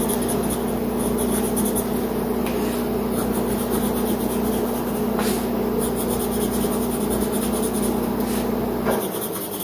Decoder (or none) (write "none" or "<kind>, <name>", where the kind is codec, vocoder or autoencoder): none